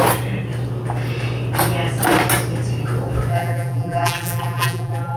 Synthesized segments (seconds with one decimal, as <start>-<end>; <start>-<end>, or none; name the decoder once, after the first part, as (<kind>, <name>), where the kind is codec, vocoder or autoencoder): 3.3-5.2 (vocoder, BigVGAN v2)